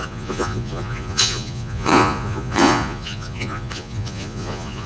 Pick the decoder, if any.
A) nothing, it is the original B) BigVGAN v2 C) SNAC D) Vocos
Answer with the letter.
D